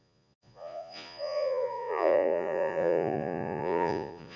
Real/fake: fake